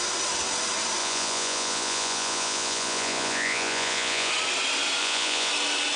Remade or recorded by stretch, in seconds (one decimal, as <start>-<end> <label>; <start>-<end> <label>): 0.0-1.0 recorded; 1.0-4.3 remade; 4.3-5.0 recorded; 5.0-5.5 remade; 5.5-6.0 recorded